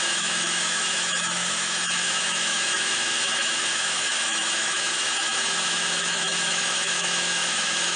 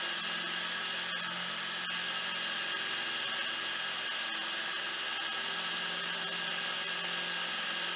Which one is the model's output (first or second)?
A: first